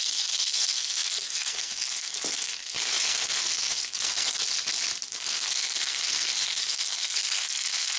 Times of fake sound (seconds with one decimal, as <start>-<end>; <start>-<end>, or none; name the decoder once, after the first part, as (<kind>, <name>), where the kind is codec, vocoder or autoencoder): 0.0-4.4 (codec, SNAC); 5.1-8.0

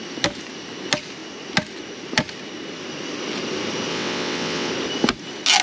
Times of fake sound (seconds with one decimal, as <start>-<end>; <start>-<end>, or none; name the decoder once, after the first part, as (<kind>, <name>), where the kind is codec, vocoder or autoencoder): 3.9-4.7 (vocoder, WaveNeXt)

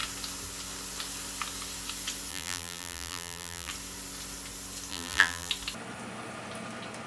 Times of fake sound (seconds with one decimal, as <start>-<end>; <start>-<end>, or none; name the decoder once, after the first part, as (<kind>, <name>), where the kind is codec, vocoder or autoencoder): 2.3-3.7 (vocoder, BigVGAN v2); 4.9-5.5

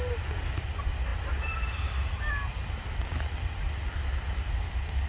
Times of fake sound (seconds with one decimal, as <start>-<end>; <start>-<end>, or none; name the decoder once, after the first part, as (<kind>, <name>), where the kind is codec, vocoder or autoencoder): none

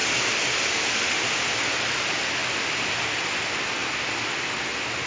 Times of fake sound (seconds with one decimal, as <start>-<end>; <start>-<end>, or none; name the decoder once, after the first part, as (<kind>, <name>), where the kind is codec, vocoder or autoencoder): 0.0-0.6 (vocoder, BigVGAN v2)

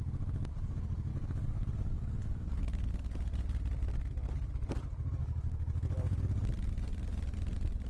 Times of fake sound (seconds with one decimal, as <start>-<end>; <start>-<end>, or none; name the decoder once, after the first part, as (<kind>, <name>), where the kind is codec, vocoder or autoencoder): 1.1-3.3 (codec, DAC); 5.2-6.2

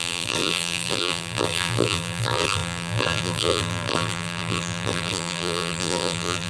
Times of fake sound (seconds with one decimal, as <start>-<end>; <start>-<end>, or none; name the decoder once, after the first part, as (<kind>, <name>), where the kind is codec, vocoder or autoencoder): 0.0-6.5 (vocoder, BigVGAN v2)